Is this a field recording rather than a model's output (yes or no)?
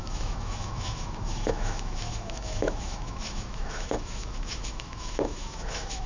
no